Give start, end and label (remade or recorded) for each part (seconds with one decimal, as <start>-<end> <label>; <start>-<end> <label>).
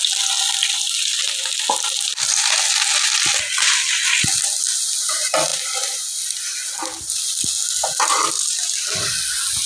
0.0-9.7 recorded